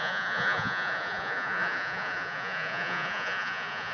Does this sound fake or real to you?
fake